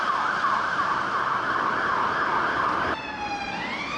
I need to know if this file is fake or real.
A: real